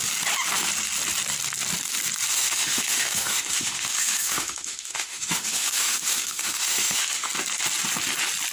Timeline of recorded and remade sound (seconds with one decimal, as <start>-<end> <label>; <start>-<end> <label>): 0.0-2.3 recorded; 2.3-7.3 remade; 7.3-8.5 recorded